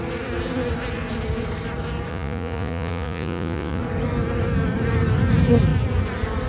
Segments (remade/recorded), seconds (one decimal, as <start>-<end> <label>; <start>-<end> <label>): 0.0-2.1 recorded; 2.1-3.8 remade; 3.8-6.5 recorded